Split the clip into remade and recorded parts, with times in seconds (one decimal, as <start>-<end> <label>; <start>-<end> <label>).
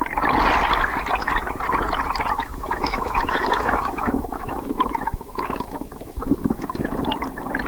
0.0-2.4 recorded; 2.4-7.0 remade; 7.0-7.7 recorded